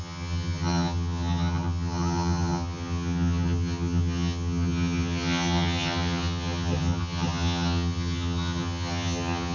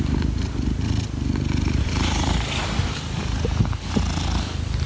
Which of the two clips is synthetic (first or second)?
first